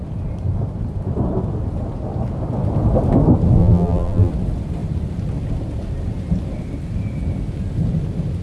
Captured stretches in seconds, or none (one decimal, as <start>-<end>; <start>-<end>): 0.0-3.6; 4.3-8.4